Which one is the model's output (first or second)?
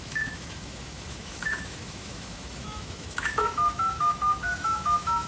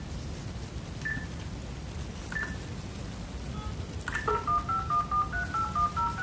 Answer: first